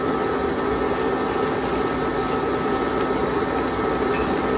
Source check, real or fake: real